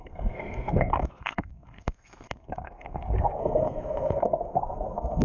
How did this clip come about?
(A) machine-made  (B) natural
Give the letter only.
A